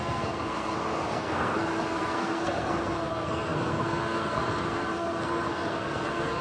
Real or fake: fake